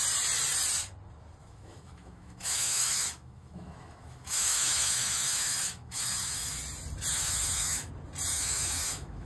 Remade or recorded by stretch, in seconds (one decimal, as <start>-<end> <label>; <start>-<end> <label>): 0.0-1.4 recorded; 1.4-6.6 remade; 6.6-7.1 recorded; 7.1-7.9 remade; 7.9-8.3 recorded; 8.3-9.3 remade